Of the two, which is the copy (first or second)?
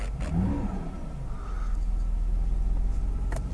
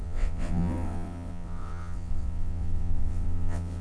second